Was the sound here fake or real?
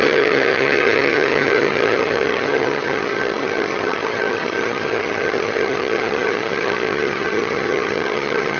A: fake